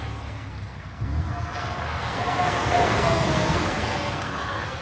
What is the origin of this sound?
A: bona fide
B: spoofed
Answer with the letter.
B